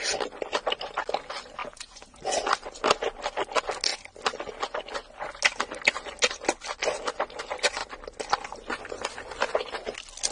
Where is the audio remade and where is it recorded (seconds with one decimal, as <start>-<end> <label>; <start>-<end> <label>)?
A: 0.0-1.6 recorded; 1.6-2.2 remade; 2.2-10.3 recorded